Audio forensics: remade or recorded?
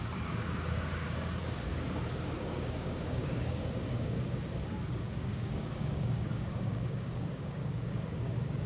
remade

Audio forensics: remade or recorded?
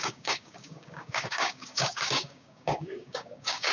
remade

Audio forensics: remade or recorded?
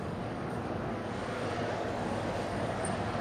remade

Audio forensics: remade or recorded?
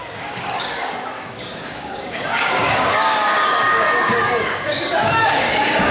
remade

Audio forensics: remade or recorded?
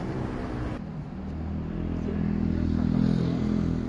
recorded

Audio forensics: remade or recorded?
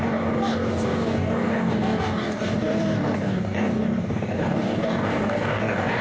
remade